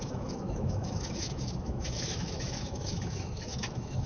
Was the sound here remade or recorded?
remade